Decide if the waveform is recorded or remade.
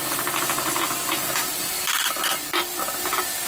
recorded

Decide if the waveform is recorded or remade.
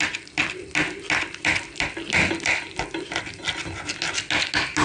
recorded